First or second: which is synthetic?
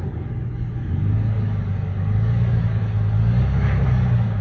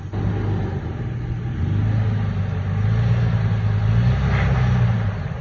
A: first